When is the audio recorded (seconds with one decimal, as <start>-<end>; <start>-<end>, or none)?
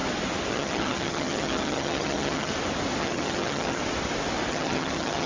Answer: 0.0-0.5; 2.5-3.0; 3.8-4.5